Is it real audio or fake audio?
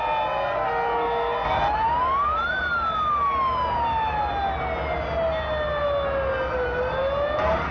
real